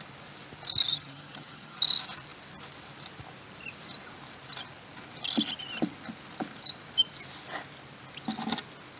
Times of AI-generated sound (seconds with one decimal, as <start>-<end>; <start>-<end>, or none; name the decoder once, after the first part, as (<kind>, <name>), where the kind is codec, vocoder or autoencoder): 0.9-1.8 (vocoder, HiFi-GAN)